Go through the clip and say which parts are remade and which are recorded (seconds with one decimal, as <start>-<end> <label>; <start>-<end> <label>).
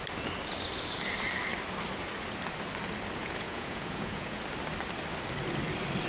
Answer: 0.0-3.2 recorded; 3.2-4.4 remade; 4.4-6.1 recorded